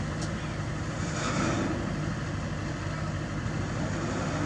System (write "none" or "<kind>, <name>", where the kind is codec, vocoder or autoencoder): none